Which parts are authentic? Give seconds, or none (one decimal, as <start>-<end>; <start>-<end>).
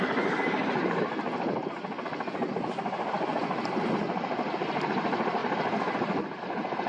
0.0-6.9